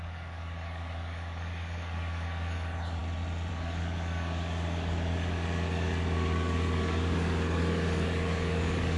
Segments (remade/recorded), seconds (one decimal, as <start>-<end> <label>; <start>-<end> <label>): 0.0-3.0 remade; 3.0-3.5 recorded; 3.5-9.0 remade